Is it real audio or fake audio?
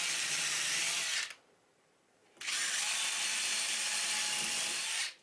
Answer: real